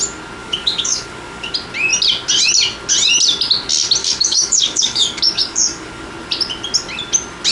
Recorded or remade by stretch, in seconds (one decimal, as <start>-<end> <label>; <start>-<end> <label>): 0.0-0.4 recorded; 0.4-1.5 remade; 1.5-4.0 recorded; 4.0-6.1 remade; 6.1-7.5 recorded